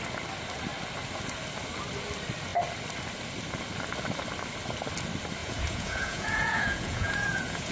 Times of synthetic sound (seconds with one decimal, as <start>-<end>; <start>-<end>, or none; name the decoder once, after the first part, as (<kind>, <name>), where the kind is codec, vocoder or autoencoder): 5.4-7.7 (vocoder, Vocos)